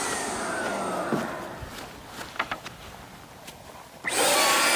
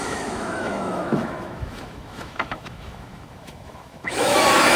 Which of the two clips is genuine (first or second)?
first